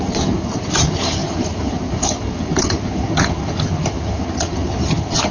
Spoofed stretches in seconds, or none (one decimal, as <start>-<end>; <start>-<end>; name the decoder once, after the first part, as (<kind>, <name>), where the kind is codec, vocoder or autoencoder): 0.0-5.3 (vocoder, HiFi-GAN)